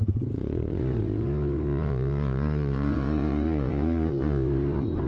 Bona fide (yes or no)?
no